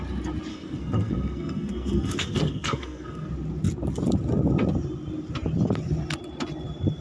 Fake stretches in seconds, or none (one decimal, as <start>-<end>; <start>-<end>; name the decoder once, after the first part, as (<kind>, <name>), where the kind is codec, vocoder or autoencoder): 0.5-3.3 (codec, SNAC)